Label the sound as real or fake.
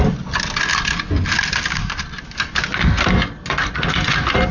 real